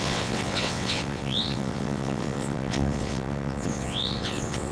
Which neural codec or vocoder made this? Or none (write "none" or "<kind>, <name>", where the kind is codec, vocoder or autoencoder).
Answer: vocoder, WaveNeXt